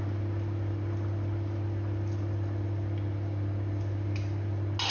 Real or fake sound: real